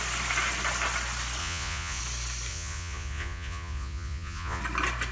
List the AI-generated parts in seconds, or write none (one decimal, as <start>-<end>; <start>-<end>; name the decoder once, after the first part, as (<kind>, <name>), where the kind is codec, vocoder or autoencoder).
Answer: 1.4-2.0 (vocoder, Vocos); 2.5-4.6